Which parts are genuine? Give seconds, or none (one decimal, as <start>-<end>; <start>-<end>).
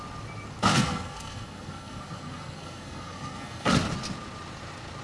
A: 0.0-0.7; 3.7-5.0